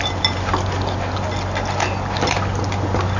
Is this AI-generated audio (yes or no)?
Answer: no